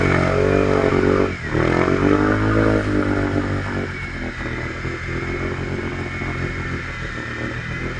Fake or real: real